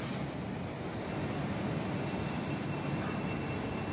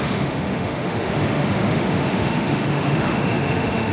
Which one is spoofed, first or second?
second